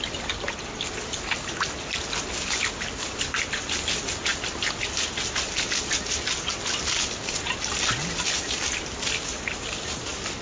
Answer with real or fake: real